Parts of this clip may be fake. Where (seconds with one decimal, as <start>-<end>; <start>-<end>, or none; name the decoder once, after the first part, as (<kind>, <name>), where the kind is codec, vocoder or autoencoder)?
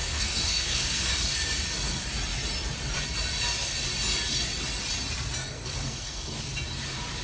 0.0-1.1 (codec, SNAC); 5.4-6.4